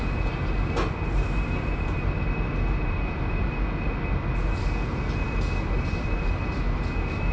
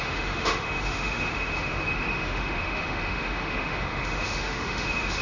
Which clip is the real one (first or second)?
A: first